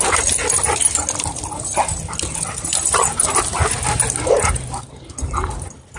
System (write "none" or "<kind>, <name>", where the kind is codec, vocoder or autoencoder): none